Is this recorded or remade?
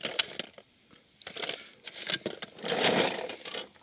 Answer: recorded